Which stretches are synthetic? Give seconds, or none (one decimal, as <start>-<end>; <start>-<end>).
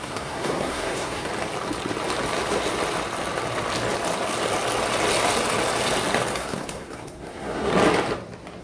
0.0-1.3; 6.3-7.7